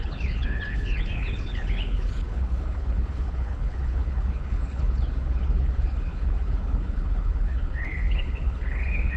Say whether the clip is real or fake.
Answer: fake